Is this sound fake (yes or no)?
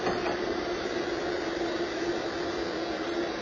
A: no